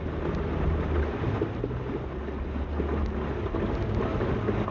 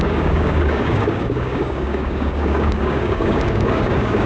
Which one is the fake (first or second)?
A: second